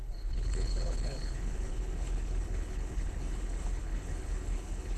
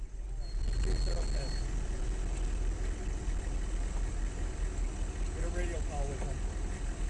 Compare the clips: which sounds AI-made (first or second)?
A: first